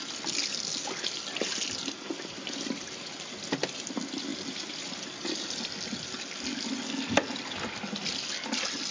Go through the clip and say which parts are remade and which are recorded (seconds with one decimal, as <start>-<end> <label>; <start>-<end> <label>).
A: 0.0-8.9 recorded

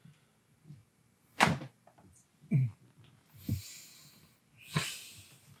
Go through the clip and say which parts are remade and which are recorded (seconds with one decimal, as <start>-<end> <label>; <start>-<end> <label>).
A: 0.0-5.6 recorded

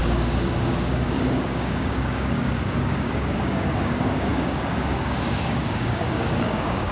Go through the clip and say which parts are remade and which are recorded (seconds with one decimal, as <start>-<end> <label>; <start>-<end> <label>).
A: 0.0-6.9 remade

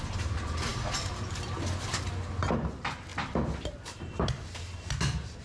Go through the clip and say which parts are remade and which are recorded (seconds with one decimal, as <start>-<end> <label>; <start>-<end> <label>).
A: 0.0-5.4 recorded